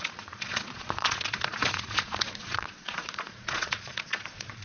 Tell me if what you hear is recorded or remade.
remade